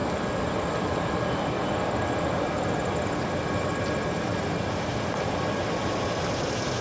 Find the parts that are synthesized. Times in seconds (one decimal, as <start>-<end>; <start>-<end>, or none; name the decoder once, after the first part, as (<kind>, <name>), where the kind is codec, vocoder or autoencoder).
none